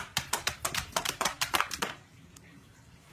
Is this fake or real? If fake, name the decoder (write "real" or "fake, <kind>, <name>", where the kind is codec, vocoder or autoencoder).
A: fake, vocoder, BigVGAN v2